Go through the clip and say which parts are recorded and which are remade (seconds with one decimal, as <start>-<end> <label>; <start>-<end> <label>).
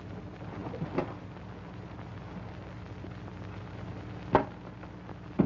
0.0-5.5 recorded